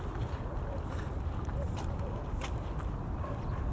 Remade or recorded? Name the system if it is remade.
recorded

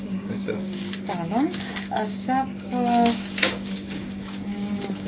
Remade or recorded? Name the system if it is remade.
remade, codec, DAC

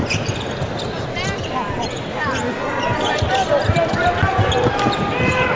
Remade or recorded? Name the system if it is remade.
recorded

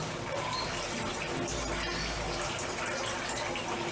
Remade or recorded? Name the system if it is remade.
recorded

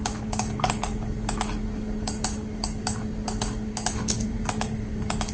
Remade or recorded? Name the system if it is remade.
remade, codec, DAC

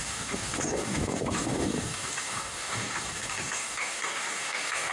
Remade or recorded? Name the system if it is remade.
remade, codec, DAC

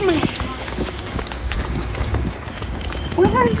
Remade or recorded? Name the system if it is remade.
remade, codec, DAC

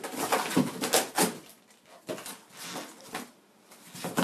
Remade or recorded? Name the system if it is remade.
recorded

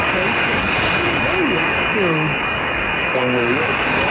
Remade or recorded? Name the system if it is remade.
remade, codec, DAC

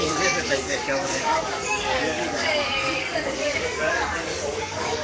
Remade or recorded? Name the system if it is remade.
remade, codec, DAC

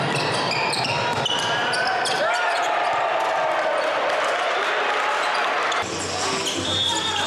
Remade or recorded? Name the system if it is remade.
recorded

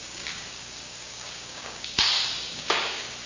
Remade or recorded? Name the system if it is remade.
remade, codec, DAC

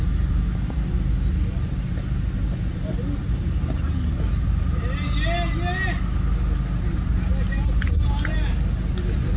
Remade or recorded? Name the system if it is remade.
recorded